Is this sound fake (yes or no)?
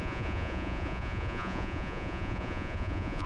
yes